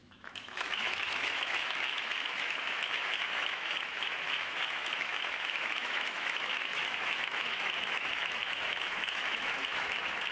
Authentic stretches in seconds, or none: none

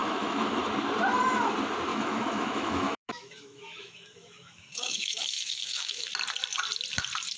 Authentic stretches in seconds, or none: 0.6-1.9; 6.1-7.4

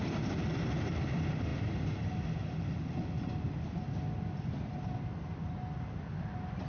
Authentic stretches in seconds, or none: 0.0-6.7

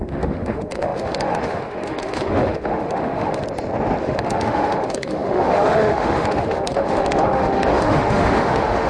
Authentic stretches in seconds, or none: 3.4-4.0

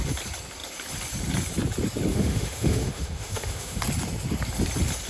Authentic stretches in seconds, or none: 0.0-2.1; 3.8-5.1

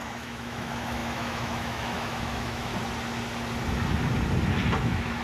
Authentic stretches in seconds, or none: 2.7-4.8

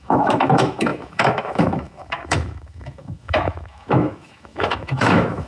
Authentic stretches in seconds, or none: none